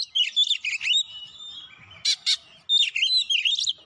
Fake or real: real